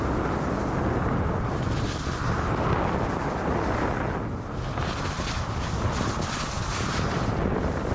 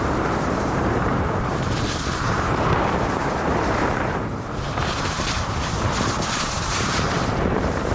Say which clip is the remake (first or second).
second